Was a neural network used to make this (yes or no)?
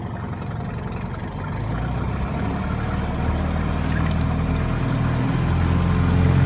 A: no